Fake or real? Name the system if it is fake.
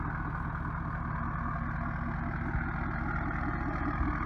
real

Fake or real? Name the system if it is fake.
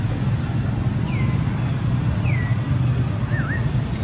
real